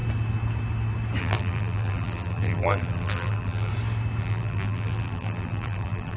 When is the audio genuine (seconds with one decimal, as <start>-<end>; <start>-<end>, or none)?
0.0-1.2; 3.7-4.2